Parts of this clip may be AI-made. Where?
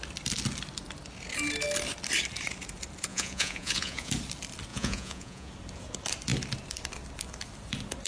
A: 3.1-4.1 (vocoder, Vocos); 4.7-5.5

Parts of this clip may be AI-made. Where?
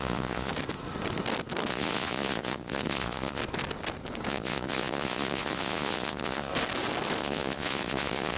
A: 0.0-0.5 (vocoder, Vocos); 1.7-3.4; 4.3-6.5; 7.2-8.4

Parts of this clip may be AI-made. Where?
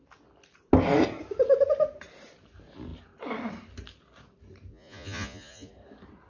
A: 4.7-5.7 (vocoder, Vocos)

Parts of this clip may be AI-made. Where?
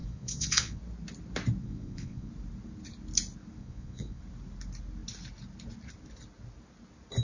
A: 0.0-0.8 (vocoder, Vocos); 1.6-2.3; 3.6-4.2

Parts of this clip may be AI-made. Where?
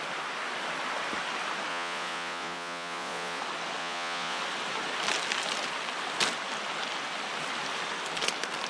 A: 1.7-3.4 (vocoder, Vocos); 3.8-4.4